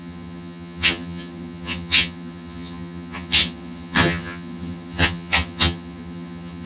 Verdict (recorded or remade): remade